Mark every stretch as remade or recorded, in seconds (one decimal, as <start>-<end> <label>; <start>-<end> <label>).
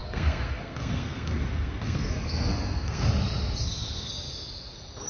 0.0-3.1 remade; 3.1-3.6 recorded; 3.6-4.1 remade; 4.1-5.1 recorded